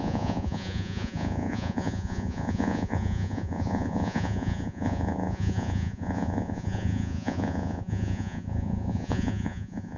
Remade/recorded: remade